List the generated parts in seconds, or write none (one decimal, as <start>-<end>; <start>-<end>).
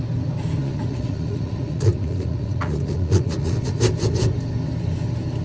0.6-3.8